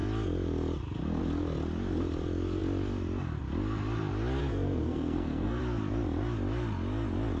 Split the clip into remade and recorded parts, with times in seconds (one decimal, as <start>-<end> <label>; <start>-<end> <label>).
0.0-4.4 recorded; 4.4-5.6 remade; 5.6-7.4 recorded